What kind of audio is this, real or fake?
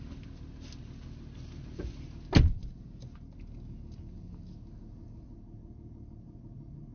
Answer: real